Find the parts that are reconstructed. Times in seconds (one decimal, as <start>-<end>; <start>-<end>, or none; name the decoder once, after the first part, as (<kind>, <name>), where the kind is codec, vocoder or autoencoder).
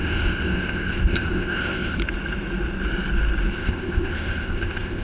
0.0-2.0 (codec, ZipCodec); 3.5-5.0